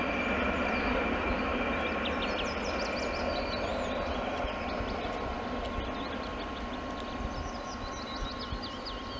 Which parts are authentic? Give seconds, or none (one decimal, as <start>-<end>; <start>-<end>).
0.0-9.2